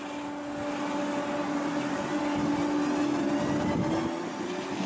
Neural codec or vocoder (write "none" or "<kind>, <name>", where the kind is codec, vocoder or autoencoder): none